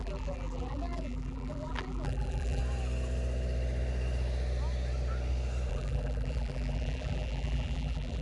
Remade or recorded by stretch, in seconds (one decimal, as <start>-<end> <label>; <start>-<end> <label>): 0.0-2.6 remade; 2.6-5.7 recorded; 5.7-8.2 remade